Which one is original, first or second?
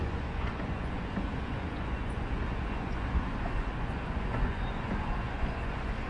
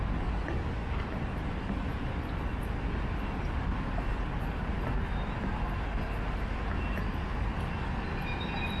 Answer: second